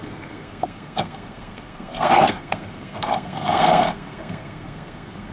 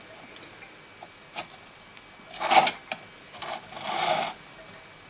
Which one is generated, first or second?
first